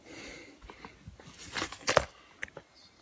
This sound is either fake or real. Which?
real